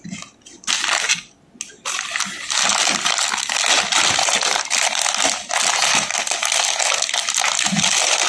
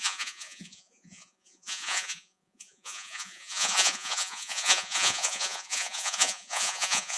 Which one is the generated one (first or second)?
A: second